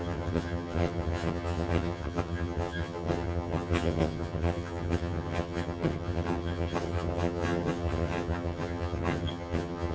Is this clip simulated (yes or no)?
yes